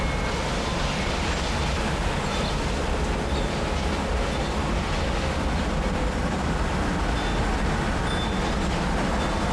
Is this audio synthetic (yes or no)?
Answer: no